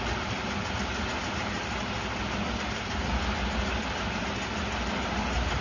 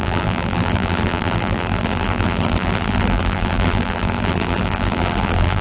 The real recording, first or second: first